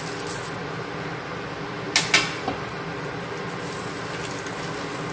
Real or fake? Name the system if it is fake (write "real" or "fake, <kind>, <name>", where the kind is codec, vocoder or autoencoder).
real